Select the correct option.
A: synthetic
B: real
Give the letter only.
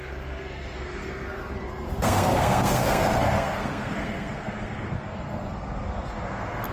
A